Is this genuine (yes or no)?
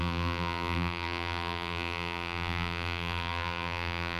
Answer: no